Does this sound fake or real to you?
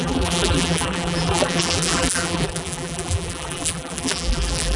fake